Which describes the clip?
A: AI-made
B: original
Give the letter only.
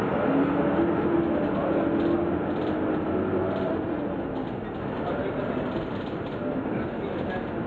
B